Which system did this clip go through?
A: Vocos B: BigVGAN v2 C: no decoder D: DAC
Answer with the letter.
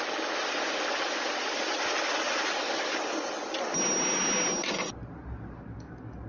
C